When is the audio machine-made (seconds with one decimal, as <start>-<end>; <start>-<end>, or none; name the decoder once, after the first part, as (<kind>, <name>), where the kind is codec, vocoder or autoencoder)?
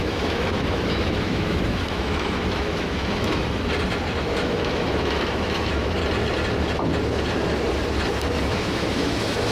0.0-3.4 (autoencoder, DAC-VAE); 4.2-6.0; 8.5-9.5